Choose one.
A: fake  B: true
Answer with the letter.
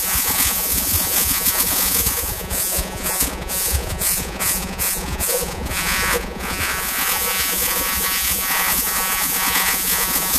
A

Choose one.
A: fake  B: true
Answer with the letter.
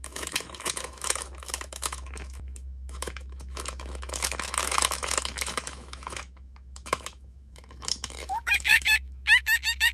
A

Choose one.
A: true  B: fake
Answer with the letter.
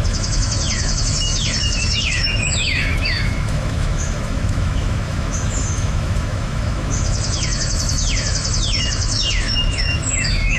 B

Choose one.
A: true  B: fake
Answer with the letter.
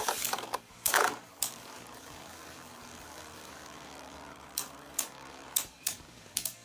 B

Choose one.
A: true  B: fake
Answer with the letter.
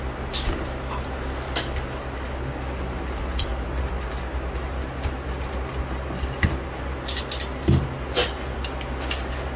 A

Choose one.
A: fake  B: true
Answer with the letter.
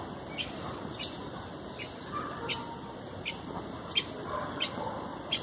B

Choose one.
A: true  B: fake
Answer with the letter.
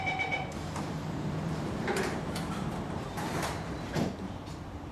B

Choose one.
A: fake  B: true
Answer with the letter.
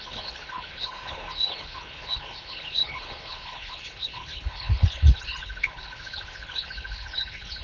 A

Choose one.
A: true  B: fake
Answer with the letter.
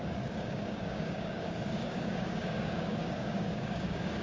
B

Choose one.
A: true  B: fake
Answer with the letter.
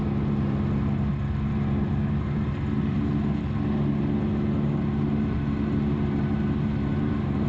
A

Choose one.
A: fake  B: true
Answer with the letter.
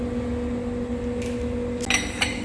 B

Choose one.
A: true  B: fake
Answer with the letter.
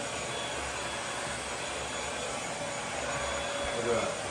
A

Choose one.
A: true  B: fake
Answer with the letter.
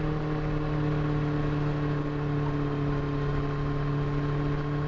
A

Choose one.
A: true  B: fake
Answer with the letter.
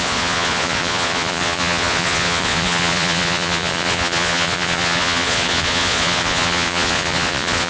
B